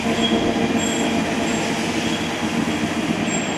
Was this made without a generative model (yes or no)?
yes